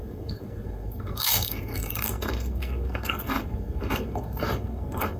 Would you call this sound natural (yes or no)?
no